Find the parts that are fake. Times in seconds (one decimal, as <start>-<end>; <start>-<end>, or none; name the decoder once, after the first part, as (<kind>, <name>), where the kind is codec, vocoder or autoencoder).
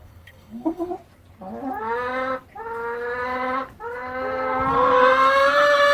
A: 0.0-0.9 (codec, SNAC)